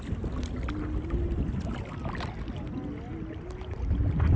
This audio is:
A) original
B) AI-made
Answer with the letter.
A